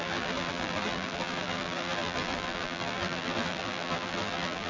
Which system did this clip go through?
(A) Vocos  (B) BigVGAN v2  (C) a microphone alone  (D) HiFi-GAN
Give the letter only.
B